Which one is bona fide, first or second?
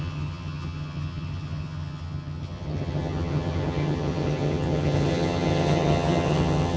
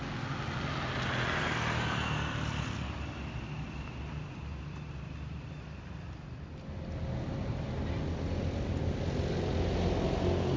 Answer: second